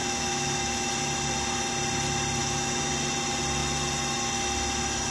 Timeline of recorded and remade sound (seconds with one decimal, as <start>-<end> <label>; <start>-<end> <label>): 0.0-0.9 remade; 0.9-2.4 recorded; 2.4-2.9 remade; 2.9-5.1 recorded